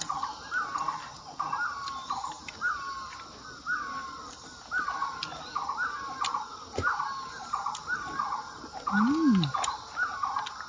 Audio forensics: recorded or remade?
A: recorded